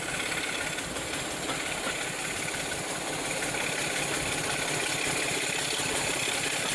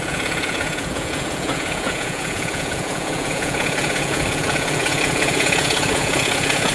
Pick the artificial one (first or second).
second